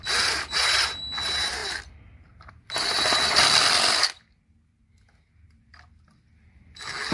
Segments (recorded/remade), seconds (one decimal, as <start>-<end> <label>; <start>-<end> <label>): 0.0-7.1 recorded